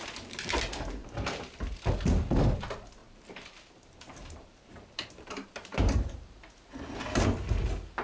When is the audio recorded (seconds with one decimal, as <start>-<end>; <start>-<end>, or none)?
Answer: 0.0-1.0; 1.8-3.0; 6.5-8.0